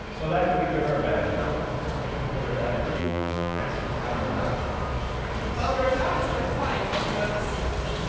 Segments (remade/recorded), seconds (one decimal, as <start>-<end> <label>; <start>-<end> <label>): 0.0-3.0 recorded; 3.0-3.6 remade; 3.6-8.1 recorded

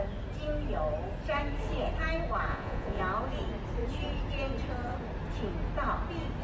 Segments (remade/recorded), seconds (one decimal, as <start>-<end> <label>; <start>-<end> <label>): 0.0-2.5 recorded; 2.5-3.0 remade; 3.0-6.4 recorded

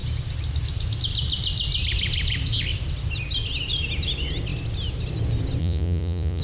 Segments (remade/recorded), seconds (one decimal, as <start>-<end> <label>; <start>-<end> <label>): 0.0-5.6 recorded; 5.6-6.4 remade

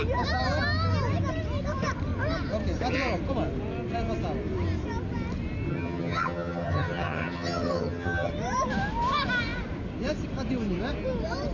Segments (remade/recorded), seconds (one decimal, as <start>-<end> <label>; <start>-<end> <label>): 0.0-5.7 recorded; 5.7-8.3 remade; 8.3-11.5 recorded

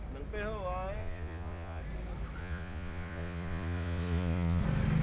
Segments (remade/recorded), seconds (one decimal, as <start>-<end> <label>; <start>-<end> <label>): 0.0-1.0 recorded; 1.0-1.8 remade; 1.8-2.4 recorded; 2.4-4.6 remade; 4.6-5.0 recorded